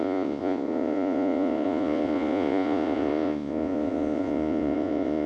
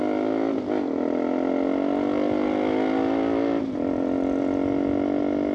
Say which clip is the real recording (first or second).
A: second